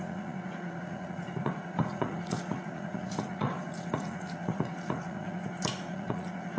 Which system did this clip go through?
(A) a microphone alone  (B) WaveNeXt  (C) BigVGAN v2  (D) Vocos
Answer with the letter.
D